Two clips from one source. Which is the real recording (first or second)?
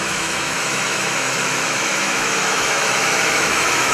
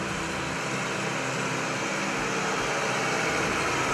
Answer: second